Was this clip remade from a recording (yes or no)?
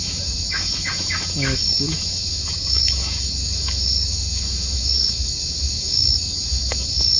yes